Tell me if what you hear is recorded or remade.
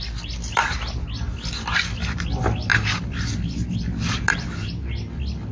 recorded